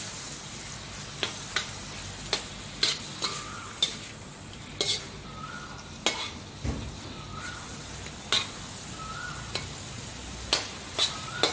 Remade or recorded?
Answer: recorded